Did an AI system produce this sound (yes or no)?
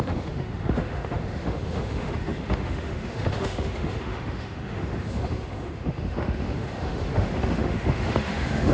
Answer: yes